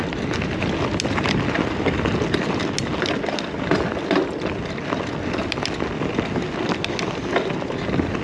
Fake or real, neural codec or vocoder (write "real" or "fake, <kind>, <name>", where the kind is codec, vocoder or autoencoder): real